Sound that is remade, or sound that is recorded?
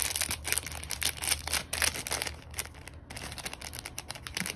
recorded